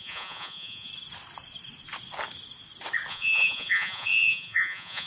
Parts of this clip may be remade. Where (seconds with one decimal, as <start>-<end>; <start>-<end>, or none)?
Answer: 0.0-0.9; 3.1-5.1